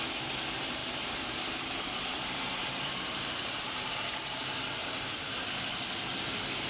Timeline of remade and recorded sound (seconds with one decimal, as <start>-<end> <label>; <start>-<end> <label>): 0.0-0.8 recorded; 0.8-3.9 remade; 3.9-4.8 recorded; 4.8-5.7 remade; 5.7-6.7 recorded